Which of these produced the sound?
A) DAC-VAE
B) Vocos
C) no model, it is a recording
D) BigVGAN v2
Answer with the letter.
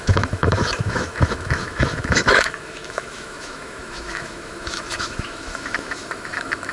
A